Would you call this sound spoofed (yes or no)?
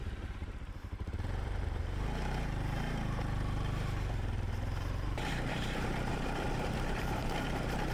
yes